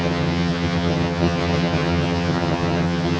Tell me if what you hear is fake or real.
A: fake